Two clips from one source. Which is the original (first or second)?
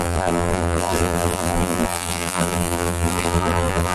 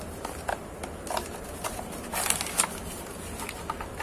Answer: second